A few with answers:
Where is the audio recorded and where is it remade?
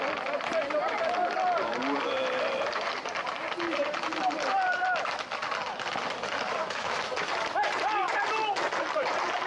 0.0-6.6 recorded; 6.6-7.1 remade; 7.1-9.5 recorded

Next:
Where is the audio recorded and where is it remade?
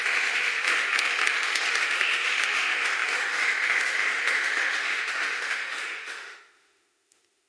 0.0-7.5 remade